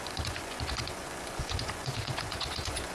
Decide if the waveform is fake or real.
fake